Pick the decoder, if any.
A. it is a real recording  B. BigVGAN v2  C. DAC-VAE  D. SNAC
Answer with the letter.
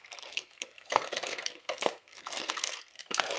D